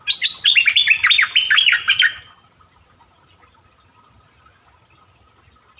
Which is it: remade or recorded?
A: recorded